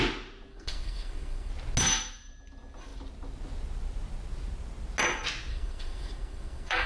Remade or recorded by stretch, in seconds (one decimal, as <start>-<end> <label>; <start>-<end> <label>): 0.0-0.5 recorded; 0.5-1.5 remade; 1.5-5.5 recorded; 5.5-6.9 remade